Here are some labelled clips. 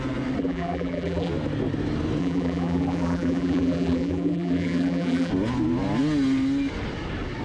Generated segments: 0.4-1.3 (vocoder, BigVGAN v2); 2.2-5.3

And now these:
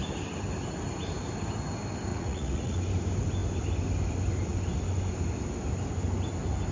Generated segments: 2.1-2.8 (vocoder, Vocos)

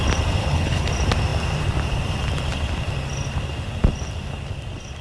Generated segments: 0.4-0.9 (codec, HILCodec)

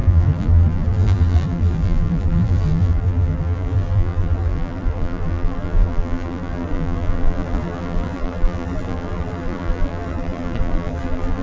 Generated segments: 0.0-11.4 (vocoder, BigVGAN v2)

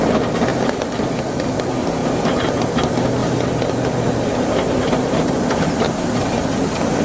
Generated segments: none

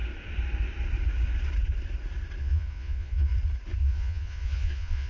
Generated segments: 2.4-3.3 (vocoder, Vocos); 3.8-5.1